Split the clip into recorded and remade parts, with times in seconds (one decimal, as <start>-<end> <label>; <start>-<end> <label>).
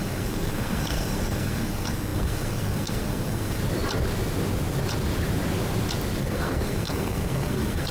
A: 0.0-3.6 remade; 3.6-6.2 recorded; 6.2-7.9 remade